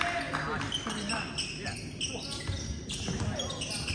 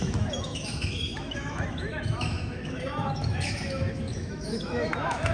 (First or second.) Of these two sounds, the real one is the first